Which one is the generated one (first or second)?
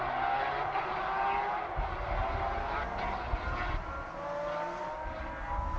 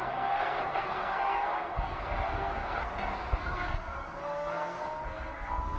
second